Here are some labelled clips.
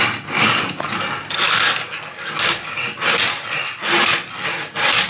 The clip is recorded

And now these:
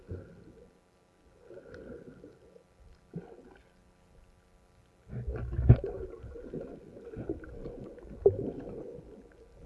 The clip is recorded